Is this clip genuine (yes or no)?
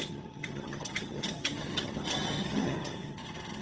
no